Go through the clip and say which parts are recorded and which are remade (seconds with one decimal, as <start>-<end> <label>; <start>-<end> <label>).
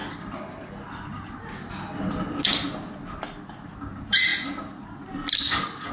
0.0-5.9 recorded